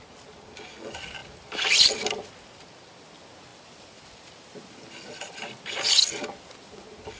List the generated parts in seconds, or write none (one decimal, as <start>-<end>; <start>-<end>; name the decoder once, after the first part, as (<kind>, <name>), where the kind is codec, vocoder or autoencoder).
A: 1.2-2.3 (vocoder, BigVGAN v2); 3.5-5.6